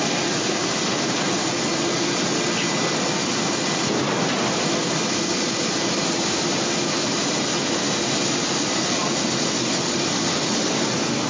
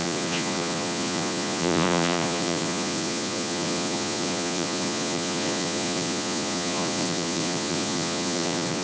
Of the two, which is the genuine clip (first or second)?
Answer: first